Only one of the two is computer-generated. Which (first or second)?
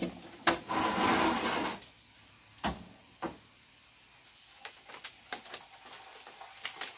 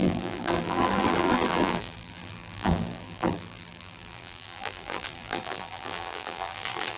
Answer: second